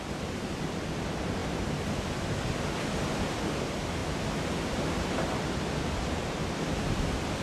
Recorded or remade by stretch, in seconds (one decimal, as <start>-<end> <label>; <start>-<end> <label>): 0.0-7.4 recorded